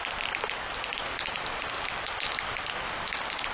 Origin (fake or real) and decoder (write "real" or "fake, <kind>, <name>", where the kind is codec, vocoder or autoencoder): real